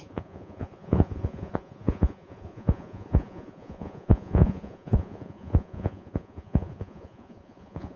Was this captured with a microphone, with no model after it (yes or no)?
no